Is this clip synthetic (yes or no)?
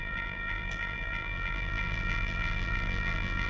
yes